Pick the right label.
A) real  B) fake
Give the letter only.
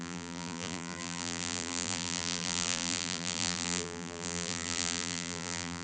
B